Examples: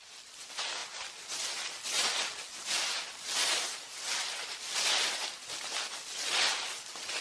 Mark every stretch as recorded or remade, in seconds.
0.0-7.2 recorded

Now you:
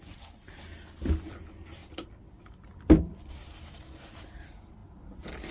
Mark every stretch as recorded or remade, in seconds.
0.0-5.5 remade

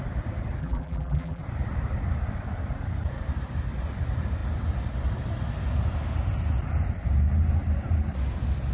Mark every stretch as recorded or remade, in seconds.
0.0-0.6 recorded; 0.6-1.4 remade; 1.4-8.7 recorded

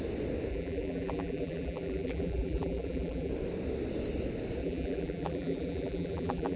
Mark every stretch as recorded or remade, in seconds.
0.0-0.5 recorded; 0.5-3.3 remade; 3.3-4.6 recorded; 4.6-6.6 remade

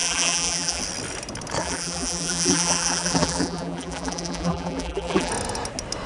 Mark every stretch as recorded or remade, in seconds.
0.0-0.8 remade; 0.8-1.6 recorded; 1.6-5.3 remade; 5.3-6.1 recorded